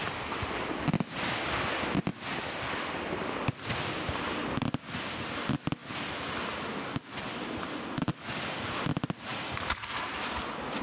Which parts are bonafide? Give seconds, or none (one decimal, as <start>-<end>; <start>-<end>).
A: 0.0-10.8